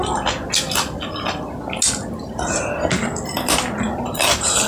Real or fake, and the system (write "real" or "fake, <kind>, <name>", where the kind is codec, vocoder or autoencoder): real